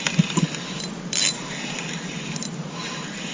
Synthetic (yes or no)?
no